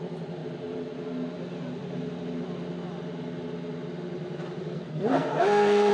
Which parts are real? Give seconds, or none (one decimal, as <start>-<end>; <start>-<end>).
0.0-4.6